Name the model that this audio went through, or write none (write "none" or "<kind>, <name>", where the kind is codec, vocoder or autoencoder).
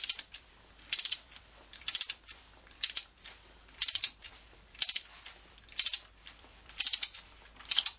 vocoder, BigVGAN v2